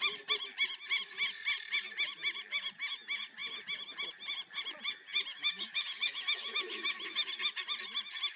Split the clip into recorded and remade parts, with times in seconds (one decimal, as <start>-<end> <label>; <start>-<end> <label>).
0.0-5.3 recorded; 5.3-7.3 remade; 7.3-8.4 recorded